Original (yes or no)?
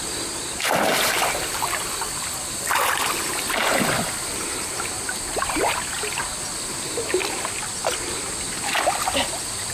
yes